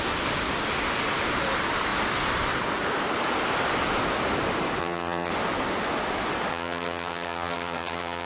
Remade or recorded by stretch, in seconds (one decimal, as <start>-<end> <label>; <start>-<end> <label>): 0.0-4.8 recorded; 4.8-5.3 remade; 5.3-6.5 recorded; 6.5-8.3 remade